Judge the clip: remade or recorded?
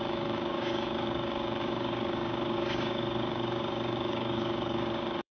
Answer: remade